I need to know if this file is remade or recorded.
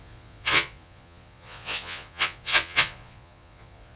remade